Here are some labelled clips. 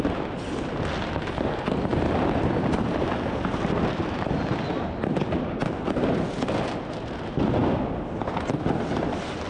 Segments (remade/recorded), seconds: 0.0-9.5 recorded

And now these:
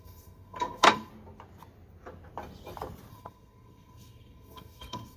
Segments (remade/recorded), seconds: 0.0-1.1 remade; 1.1-3.1 recorded; 3.1-5.2 remade